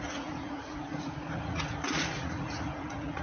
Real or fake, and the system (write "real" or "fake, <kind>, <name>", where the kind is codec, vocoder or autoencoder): fake, vocoder, Vocos